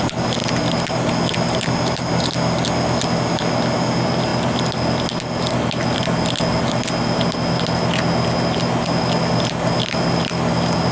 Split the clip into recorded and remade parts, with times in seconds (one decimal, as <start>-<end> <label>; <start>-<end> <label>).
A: 0.0-10.9 recorded